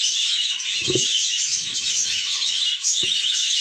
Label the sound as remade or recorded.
remade